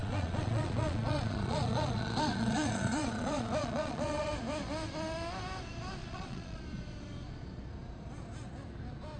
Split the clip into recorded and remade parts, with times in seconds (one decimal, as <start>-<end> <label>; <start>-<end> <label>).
0.0-4.3 remade; 4.3-6.0 recorded; 6.0-6.6 remade; 6.6-9.2 recorded